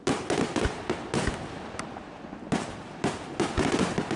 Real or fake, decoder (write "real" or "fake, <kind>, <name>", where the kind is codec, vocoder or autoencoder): real